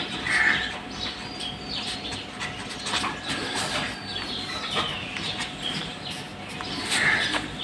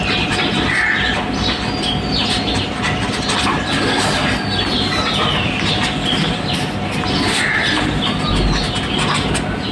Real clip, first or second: second